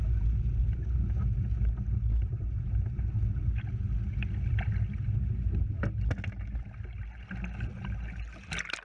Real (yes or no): yes